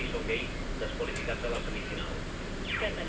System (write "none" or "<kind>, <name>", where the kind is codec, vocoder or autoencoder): none